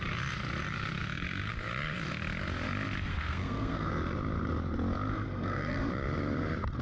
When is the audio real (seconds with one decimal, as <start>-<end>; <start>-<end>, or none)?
0.0-1.0; 1.5-3.1; 3.9-5.1; 5.9-6.8